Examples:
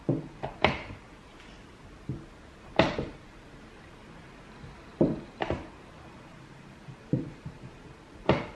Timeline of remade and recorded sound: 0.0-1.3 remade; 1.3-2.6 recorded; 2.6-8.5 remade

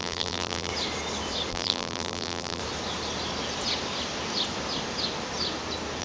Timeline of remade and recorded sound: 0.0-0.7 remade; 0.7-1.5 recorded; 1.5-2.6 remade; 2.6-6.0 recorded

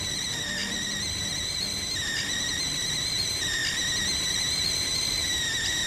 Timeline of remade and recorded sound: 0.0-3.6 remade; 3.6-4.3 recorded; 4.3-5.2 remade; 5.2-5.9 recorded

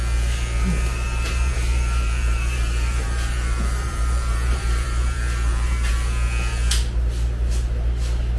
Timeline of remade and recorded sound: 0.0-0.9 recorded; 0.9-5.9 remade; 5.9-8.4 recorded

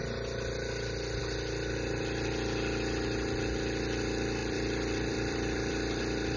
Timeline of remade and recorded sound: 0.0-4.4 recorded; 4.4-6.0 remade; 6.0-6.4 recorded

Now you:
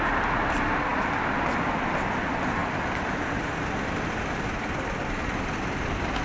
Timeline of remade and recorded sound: 0.0-6.2 recorded